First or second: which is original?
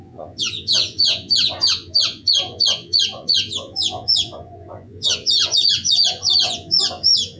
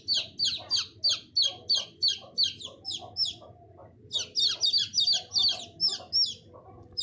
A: second